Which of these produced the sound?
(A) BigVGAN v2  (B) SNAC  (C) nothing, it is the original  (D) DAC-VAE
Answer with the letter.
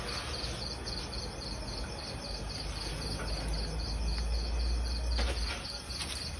C